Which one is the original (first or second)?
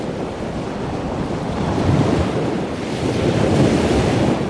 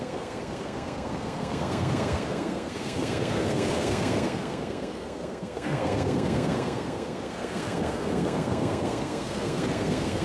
first